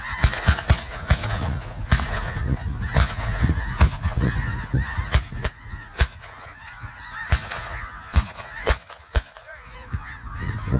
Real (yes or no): no